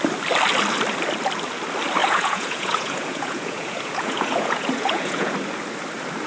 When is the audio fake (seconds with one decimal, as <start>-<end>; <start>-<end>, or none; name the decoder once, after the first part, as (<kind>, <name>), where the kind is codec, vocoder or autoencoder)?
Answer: 2.0-5.3 (vocoder, Vocos)